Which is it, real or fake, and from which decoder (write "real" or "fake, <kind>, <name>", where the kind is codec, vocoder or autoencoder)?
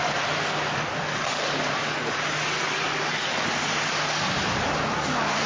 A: real